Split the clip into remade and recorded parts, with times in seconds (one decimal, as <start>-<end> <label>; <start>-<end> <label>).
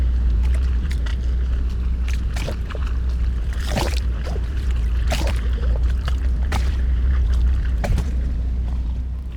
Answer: 0.0-1.1 remade; 1.1-2.3 recorded; 2.3-2.8 remade; 2.8-3.4 recorded; 3.4-9.4 remade